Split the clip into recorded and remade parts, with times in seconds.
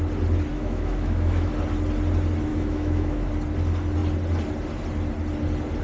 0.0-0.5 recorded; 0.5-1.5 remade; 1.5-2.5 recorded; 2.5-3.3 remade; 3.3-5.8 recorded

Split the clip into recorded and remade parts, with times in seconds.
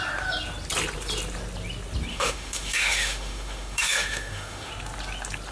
0.0-2.1 recorded; 2.1-4.7 remade; 4.7-5.5 recorded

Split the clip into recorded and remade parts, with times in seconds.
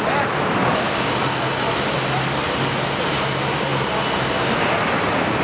0.0-5.4 recorded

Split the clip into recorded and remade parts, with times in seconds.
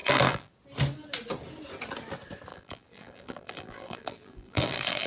0.0-0.5 remade; 0.5-2.5 recorded; 2.5-5.1 remade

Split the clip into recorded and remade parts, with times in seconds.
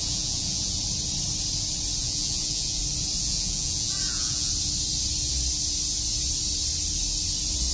0.0-0.8 remade; 0.8-2.0 recorded; 2.0-2.8 remade; 2.8-3.2 recorded; 3.2-4.5 remade; 4.5-7.7 recorded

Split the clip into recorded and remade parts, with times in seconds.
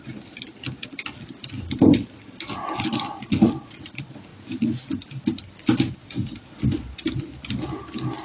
0.0-8.2 recorded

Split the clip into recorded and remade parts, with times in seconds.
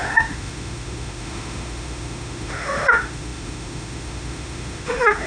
0.0-5.3 remade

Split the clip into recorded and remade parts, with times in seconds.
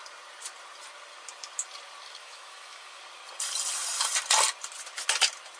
0.0-2.2 recorded; 2.2-3.0 remade; 3.0-5.6 recorded